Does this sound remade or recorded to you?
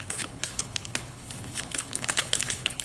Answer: remade